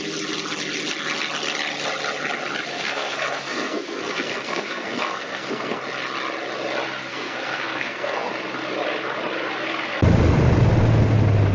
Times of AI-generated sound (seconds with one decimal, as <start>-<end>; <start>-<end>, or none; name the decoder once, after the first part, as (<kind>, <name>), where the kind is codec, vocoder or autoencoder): 2.7-5.8 (codec, SNAC); 7.1-8.3